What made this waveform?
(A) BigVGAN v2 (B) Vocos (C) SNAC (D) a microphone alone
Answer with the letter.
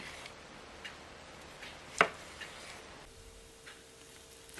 D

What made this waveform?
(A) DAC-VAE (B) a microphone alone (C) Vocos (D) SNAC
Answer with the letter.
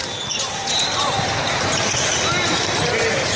B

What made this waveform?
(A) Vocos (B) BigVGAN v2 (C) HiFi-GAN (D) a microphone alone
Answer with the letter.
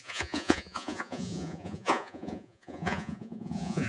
A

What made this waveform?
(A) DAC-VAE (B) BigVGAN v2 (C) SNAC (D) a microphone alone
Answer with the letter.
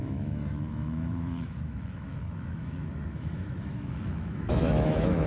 A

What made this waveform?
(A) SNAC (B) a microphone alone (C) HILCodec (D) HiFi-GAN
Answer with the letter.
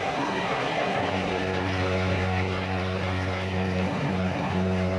A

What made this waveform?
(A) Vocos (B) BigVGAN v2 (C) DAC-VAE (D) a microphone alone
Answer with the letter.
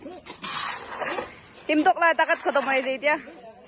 D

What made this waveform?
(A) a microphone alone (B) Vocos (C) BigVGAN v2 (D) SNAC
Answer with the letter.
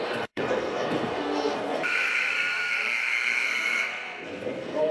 D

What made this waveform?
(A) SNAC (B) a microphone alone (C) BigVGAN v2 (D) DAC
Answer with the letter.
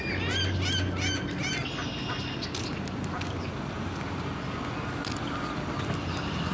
B